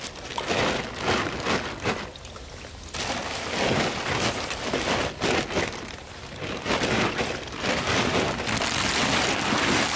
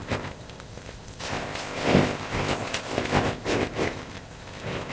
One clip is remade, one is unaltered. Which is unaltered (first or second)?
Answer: first